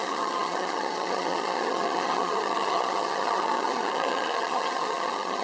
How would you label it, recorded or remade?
remade